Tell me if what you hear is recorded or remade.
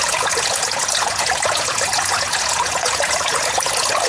remade